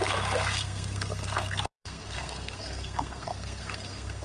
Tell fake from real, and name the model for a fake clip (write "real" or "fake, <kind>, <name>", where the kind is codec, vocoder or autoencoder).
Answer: fake, codec, SNAC